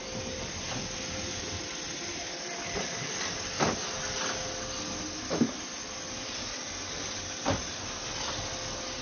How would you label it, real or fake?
real